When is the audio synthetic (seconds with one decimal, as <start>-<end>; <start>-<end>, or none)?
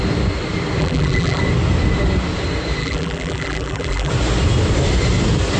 0.8-1.4; 2.8-4.1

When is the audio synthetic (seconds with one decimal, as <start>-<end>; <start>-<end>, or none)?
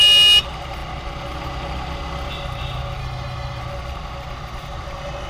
3.0-3.6